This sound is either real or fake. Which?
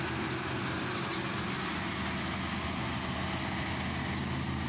real